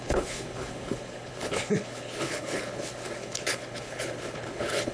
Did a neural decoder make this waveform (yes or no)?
yes